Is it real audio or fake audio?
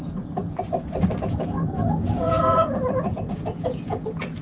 fake